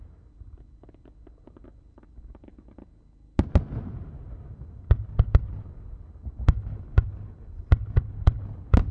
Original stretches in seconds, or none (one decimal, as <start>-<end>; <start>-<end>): 0.0-8.9